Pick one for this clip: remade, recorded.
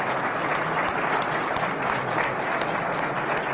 recorded